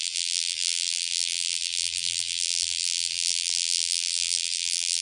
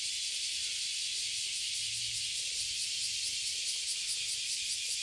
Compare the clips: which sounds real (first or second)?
second